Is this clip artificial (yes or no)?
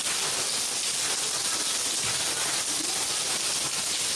no